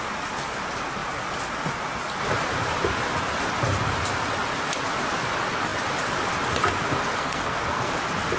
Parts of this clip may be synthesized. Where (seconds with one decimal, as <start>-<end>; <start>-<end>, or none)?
7.1-7.9